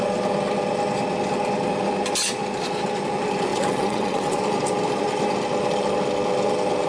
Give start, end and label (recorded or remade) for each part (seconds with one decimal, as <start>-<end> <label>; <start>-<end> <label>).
0.0-3.5 recorded; 3.5-4.4 remade; 4.4-6.9 recorded